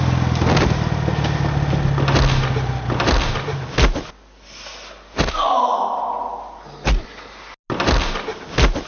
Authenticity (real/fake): real